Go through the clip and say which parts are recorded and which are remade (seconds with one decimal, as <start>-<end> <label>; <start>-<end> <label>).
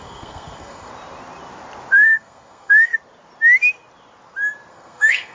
0.0-0.9 remade; 0.9-1.9 recorded; 1.9-2.9 remade; 2.9-4.7 recorded; 4.7-5.3 remade